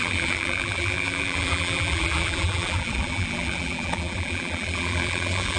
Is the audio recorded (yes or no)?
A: no